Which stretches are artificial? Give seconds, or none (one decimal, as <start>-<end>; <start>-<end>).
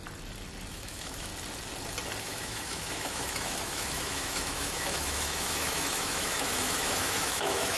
0.7-1.3; 2.2-7.8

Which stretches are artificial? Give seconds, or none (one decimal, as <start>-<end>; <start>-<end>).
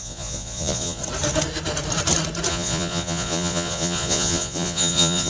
0.0-1.0; 2.5-5.3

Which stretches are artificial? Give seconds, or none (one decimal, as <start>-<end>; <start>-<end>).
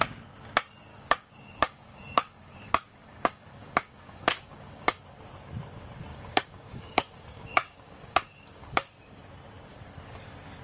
0.9-5.0; 6.1-9.2; 9.7-10.2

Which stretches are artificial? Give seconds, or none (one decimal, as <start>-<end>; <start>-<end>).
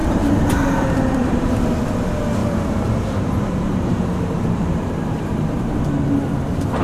0.0-1.4; 2.4-5.8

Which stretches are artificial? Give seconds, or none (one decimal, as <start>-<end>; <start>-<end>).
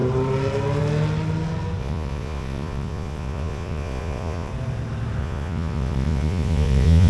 1.8-4.5; 5.2-7.1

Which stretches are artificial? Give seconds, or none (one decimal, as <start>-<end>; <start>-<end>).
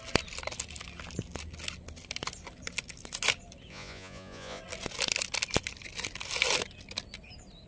3.7-4.6